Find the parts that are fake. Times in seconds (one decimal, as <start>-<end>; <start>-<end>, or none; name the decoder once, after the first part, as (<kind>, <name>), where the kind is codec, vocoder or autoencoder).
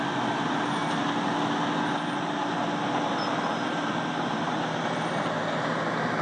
none